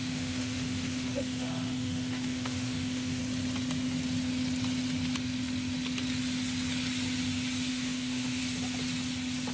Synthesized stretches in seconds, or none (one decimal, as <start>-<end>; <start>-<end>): 0.0-3.2; 7.7-8.4